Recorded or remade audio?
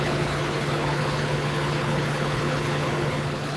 remade